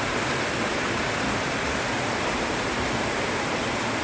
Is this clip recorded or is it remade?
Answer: recorded